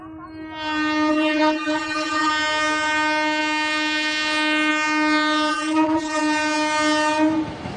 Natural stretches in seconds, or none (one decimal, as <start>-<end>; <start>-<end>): 0.0-1.1; 2.3-5.5; 6.2-7.8